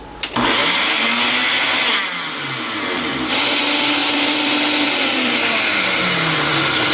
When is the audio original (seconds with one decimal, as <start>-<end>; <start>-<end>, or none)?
0.0-4.0